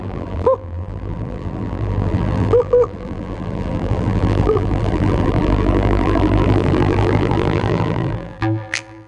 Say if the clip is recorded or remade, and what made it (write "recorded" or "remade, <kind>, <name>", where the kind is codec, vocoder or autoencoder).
remade, vocoder, BigVGAN v2